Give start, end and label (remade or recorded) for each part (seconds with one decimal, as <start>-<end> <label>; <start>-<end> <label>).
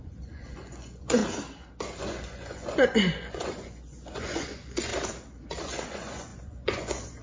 0.0-1.2 remade; 1.2-2.0 recorded; 2.0-4.9 remade; 4.9-5.6 recorded; 5.6-7.2 remade